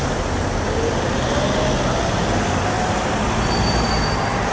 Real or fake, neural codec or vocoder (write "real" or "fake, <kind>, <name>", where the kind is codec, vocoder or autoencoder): real